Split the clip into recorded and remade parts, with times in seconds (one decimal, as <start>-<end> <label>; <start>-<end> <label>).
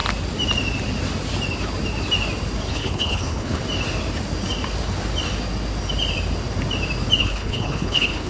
0.0-2.7 recorded; 2.7-3.6 remade; 3.6-7.2 recorded; 7.2-8.3 remade